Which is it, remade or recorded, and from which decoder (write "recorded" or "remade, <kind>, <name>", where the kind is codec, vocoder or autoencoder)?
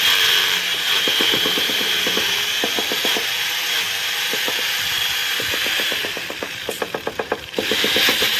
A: remade, vocoder, BigVGAN v2